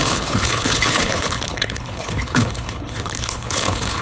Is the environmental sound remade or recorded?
remade